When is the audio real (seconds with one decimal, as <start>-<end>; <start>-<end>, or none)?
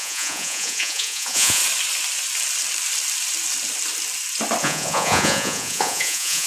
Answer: 1.6-4.6